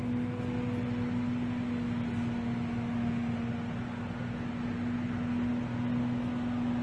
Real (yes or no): yes